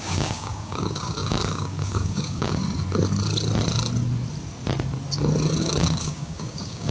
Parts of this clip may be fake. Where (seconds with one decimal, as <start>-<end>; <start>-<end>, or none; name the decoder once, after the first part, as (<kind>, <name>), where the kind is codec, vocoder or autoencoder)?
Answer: 0.0-2.6 (codec, DAC); 5.6-6.9